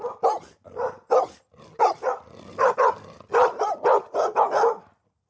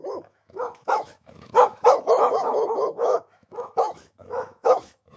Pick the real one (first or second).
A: first